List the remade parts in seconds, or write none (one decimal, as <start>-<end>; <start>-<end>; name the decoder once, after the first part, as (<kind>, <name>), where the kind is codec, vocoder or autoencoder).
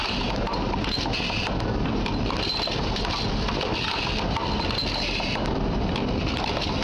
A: 0.0-1.0 (vocoder, BigVGAN v2)